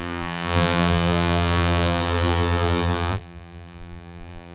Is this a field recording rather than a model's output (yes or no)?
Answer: no